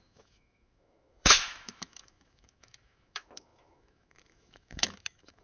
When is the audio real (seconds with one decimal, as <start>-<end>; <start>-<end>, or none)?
none